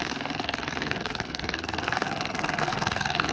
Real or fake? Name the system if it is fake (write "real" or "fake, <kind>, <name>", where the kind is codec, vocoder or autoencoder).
fake, codec, SNAC